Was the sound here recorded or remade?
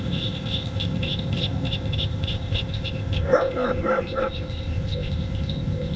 remade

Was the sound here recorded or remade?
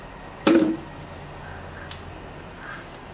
recorded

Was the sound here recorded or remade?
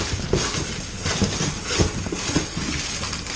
recorded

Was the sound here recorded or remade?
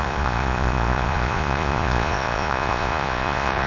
remade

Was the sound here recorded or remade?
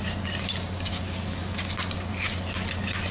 recorded